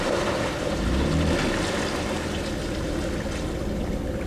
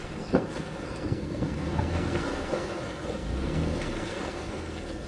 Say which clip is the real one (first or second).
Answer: first